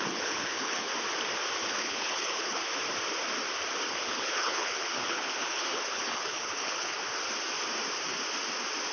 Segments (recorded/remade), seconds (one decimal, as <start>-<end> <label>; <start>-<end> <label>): 0.0-0.9 remade; 0.9-1.7 recorded; 1.7-2.6 remade; 2.6-3.9 recorded; 3.9-7.0 remade; 7.0-8.9 recorded